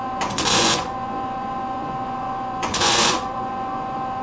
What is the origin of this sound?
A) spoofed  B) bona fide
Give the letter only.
A